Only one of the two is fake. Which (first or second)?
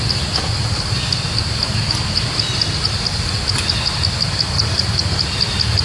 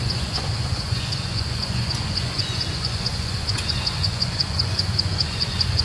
second